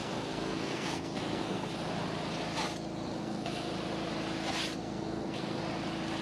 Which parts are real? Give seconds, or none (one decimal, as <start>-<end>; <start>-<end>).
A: 1.7-3.1; 3.7-4.8; 5.6-6.2